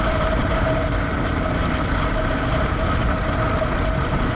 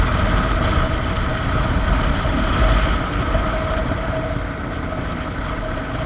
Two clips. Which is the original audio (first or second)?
second